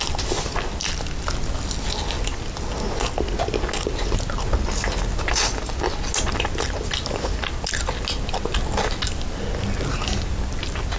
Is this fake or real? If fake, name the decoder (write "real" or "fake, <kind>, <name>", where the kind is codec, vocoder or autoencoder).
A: real